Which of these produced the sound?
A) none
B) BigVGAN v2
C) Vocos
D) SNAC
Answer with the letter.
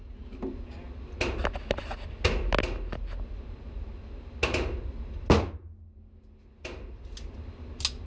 A